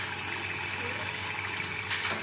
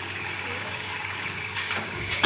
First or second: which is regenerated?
second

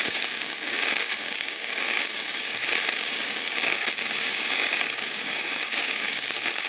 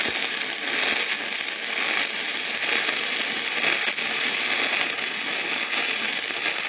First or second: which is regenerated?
first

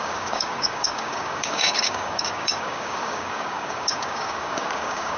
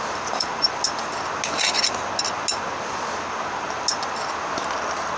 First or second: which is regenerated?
first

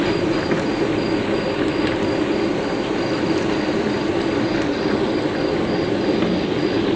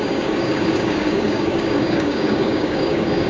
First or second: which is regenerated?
second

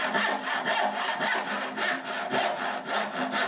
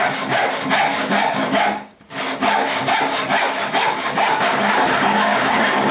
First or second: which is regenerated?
second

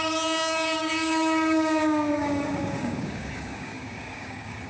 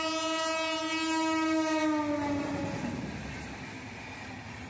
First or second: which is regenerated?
first